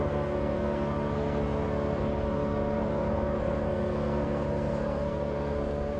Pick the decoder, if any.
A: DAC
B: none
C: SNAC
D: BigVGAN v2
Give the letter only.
C